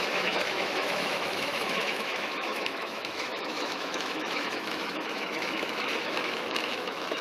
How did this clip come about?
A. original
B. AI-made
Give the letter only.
B